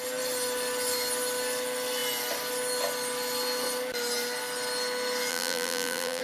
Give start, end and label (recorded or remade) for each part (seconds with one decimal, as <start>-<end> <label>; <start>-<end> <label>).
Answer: 0.0-5.3 recorded; 5.3-6.2 remade